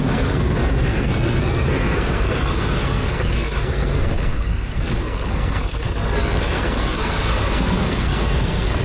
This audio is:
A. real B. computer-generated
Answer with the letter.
B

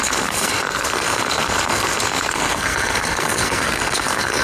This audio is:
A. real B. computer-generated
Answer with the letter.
B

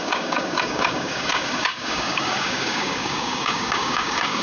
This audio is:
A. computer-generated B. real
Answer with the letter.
A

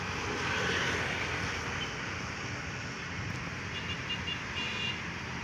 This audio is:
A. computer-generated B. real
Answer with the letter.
A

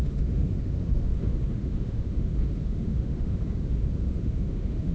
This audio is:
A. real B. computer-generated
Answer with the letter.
B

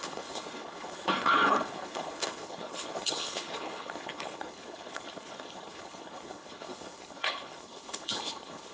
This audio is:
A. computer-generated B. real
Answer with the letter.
A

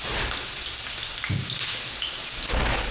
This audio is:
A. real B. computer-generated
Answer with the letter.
A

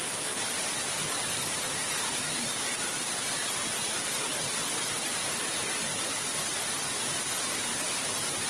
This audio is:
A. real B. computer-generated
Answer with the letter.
A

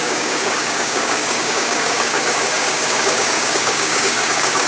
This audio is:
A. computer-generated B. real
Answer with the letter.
A